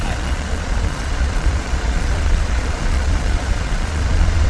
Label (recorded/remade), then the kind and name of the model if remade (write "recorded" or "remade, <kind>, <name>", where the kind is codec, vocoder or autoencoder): remade, vocoder, Vocos